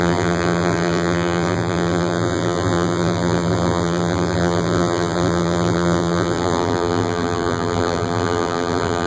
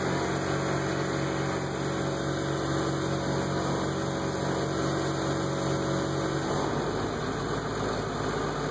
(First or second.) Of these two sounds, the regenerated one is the first